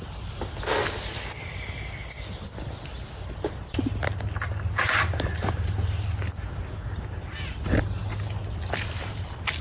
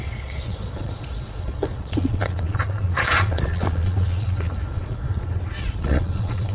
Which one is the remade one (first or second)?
second